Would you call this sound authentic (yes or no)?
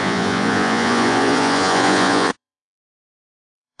no